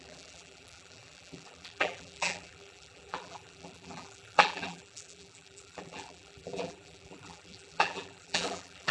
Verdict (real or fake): fake